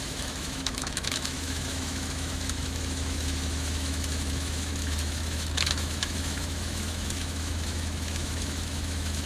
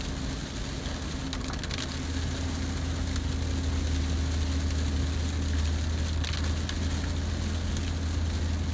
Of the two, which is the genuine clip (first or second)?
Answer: second